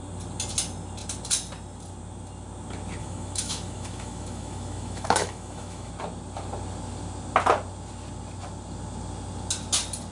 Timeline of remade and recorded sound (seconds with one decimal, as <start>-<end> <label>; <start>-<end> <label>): 0.0-3.0 recorded; 3.0-5.9 remade; 5.9-10.1 recorded